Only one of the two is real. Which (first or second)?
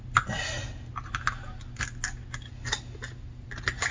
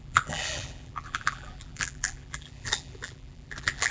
first